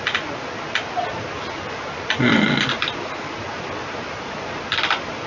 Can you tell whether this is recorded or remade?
recorded